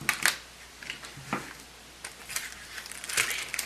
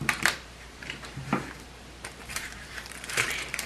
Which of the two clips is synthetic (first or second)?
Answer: second